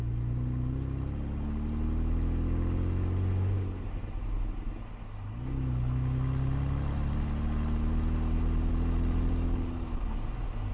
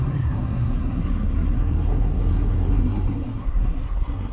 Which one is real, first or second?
first